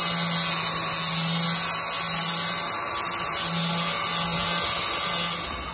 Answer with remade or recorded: recorded